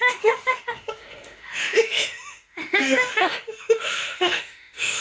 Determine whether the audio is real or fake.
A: fake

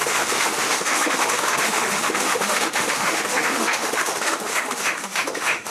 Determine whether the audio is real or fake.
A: fake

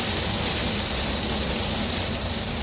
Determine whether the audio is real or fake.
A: real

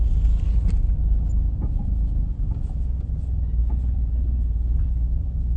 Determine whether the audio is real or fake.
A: real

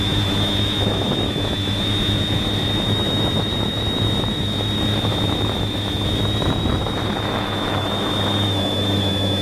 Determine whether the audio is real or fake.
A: fake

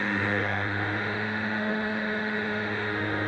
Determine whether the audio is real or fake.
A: fake